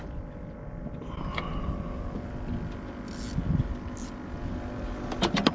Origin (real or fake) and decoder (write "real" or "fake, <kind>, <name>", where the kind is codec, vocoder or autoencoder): real